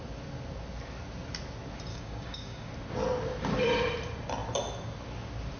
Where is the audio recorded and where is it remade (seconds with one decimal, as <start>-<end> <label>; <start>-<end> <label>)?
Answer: 0.0-1.9 recorded; 1.9-2.7 remade; 2.7-5.6 recorded